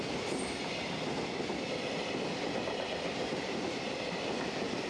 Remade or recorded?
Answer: recorded